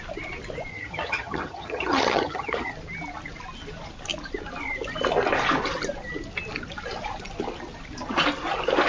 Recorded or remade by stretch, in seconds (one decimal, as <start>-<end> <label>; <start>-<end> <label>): 0.0-0.7 recorded; 0.7-2.7 remade; 2.7-8.9 recorded